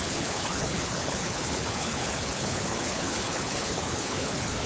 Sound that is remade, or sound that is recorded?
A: remade